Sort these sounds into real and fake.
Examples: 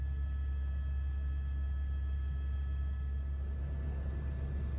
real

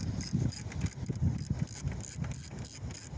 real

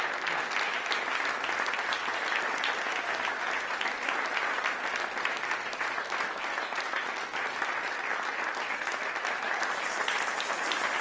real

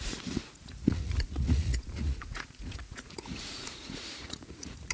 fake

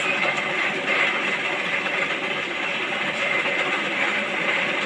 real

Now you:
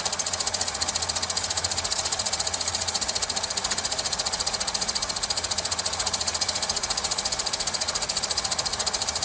fake